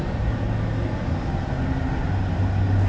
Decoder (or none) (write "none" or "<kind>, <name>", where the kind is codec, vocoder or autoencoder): none